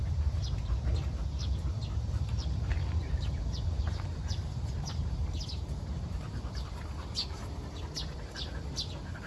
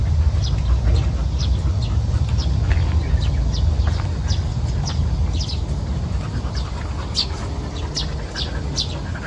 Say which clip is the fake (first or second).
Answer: first